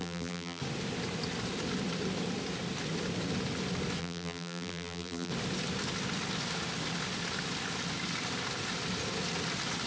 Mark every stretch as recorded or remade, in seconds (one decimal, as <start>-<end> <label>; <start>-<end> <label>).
0.0-0.6 remade; 0.6-4.0 recorded; 4.0-5.3 remade; 5.3-9.9 recorded